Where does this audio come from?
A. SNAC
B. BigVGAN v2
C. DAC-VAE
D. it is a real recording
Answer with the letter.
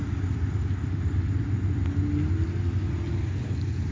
D